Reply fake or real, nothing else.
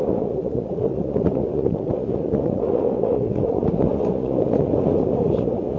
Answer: fake